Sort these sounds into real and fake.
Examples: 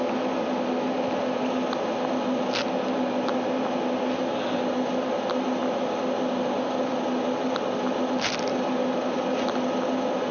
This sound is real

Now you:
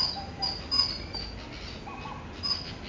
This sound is real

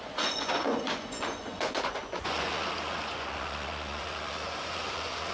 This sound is fake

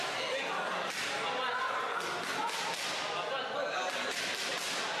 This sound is real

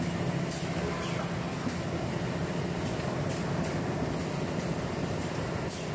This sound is real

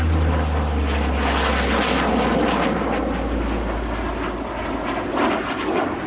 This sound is real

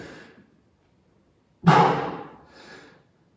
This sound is real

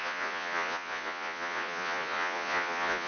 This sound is fake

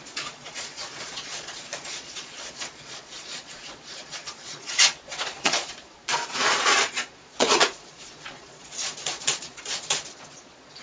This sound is fake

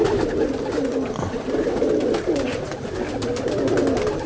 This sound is real